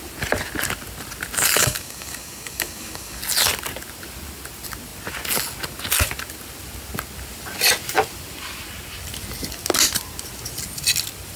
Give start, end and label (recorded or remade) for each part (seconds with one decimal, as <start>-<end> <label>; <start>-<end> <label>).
0.0-1.6 recorded; 1.6-3.2 remade; 3.2-11.4 recorded